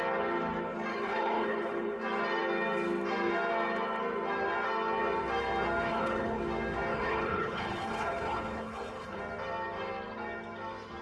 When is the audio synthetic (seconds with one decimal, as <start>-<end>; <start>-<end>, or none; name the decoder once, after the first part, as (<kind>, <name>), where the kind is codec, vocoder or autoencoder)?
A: 0.9-1.9 (codec, HILCodec); 5.9-6.4; 6.9-9.2